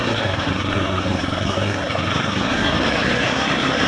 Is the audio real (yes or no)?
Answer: no